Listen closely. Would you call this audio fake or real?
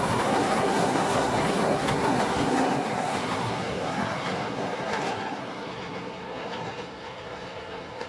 fake